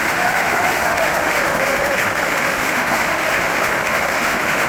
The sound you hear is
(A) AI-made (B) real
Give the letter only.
A